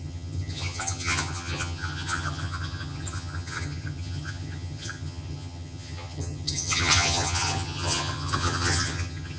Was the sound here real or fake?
fake